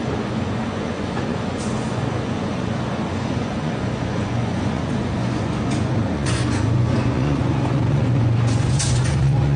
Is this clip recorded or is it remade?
remade